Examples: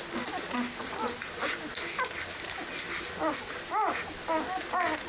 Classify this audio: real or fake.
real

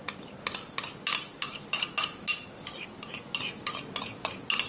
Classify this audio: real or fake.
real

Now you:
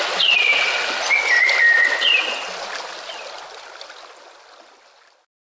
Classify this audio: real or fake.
real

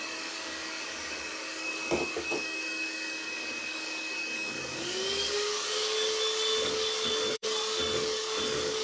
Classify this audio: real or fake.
fake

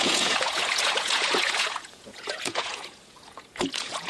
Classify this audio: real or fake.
fake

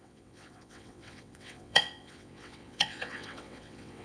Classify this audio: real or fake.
fake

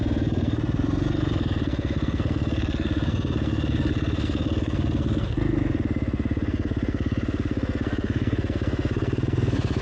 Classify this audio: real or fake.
fake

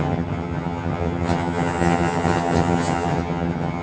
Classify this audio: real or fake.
fake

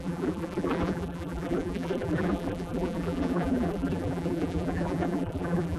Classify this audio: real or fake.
fake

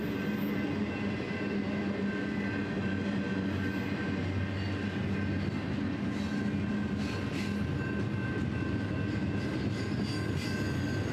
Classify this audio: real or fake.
real